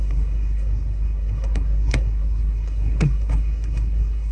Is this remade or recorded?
remade